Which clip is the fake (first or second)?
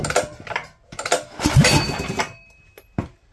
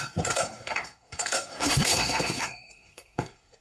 second